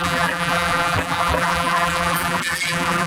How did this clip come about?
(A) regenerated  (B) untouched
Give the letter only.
A